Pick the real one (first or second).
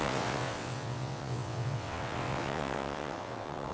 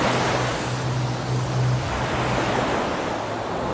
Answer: second